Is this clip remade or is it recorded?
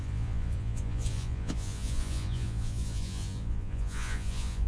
remade